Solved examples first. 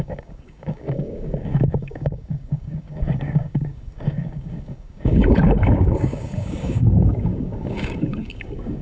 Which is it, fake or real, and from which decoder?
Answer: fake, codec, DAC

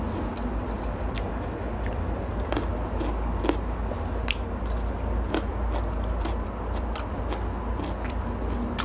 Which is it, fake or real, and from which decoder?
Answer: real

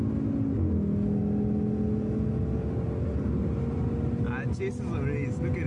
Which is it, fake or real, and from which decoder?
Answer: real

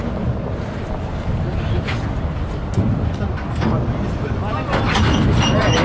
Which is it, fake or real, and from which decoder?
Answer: real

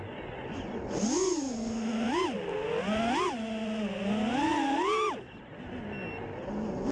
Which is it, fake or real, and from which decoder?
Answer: real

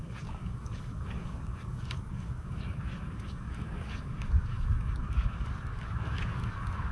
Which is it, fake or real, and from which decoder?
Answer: fake, codec, DAC